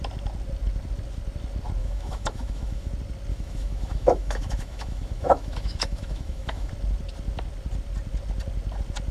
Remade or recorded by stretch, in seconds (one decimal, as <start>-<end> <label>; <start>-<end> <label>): 0.0-1.8 recorded; 1.8-2.9 remade; 2.9-3.3 recorded; 3.3-6.7 remade; 6.7-9.1 recorded